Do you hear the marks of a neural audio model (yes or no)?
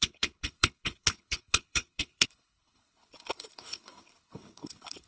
yes